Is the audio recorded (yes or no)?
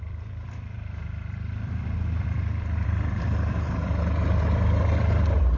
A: no